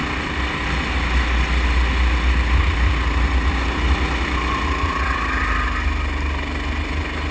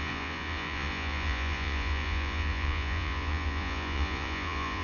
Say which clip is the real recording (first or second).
first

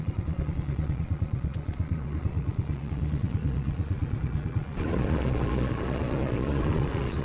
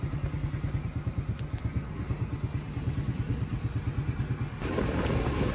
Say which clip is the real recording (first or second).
second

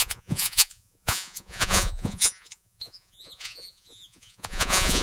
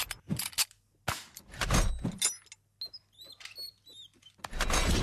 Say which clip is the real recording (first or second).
second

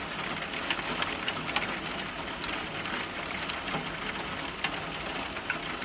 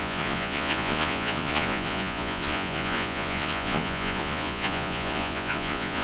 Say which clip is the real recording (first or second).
first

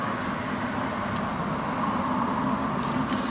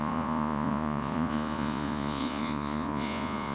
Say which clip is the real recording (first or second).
first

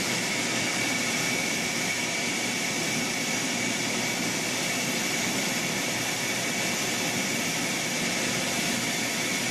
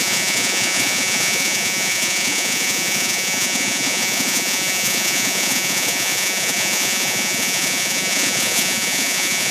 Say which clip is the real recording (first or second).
first